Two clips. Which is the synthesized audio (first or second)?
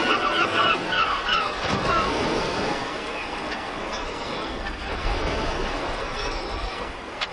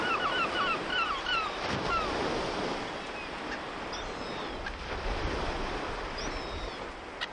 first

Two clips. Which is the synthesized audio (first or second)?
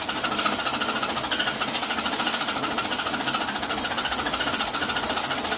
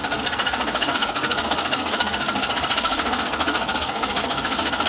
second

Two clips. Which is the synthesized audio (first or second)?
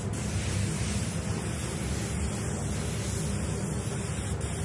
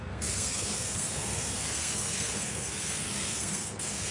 second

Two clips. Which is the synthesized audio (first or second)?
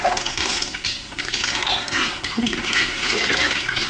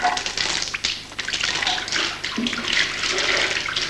first